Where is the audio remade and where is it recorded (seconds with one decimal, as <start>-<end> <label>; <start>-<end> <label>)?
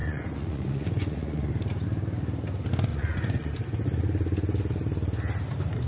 0.0-1.5 remade; 1.5-2.9 recorded; 2.9-3.5 remade; 3.5-5.9 recorded